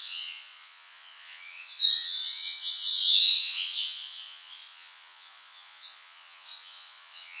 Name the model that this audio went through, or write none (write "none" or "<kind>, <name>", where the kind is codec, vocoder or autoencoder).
vocoder, Vocos